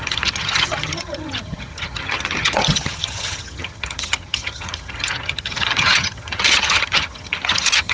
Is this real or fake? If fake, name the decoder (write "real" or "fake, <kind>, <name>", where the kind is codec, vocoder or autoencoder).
fake, vocoder, HiFi-GAN